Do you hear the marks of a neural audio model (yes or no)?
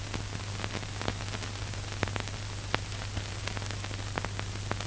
no